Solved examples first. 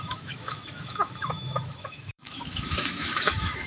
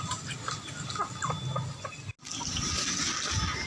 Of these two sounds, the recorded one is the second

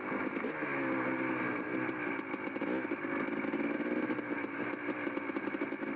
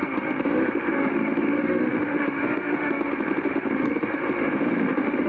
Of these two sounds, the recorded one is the first